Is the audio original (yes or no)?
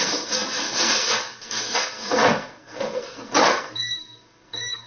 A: no